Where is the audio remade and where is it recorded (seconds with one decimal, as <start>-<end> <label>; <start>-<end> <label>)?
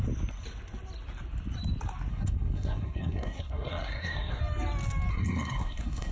0.0-2.1 recorded; 2.1-4.4 remade; 4.4-5.1 recorded; 5.1-6.1 remade